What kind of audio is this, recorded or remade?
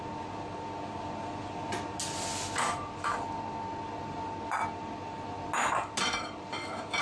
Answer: recorded